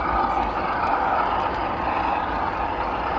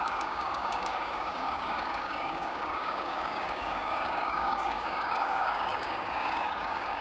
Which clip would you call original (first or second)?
first